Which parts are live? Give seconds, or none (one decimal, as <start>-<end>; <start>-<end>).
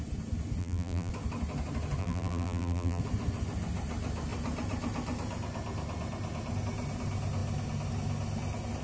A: 0.0-0.6; 1.1-2.0; 3.0-8.8